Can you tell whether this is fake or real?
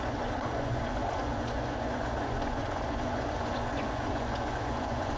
fake